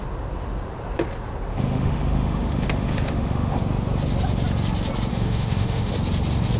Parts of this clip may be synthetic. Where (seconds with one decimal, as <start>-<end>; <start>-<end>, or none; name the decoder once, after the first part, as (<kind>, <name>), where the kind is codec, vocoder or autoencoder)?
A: 1.5-3.6 (autoencoder, DAC-VAE); 5.1-5.9